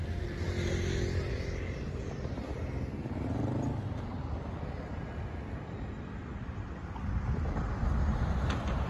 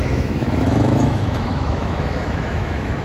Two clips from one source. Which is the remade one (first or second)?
second